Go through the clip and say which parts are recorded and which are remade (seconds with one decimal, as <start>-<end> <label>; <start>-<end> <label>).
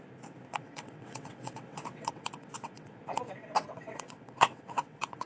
0.0-0.5 recorded; 0.5-3.0 remade; 3.0-3.4 recorded; 3.4-5.3 remade